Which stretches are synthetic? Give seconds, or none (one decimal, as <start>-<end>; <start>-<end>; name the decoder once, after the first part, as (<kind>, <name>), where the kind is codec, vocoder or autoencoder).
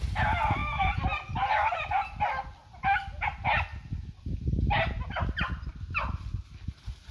none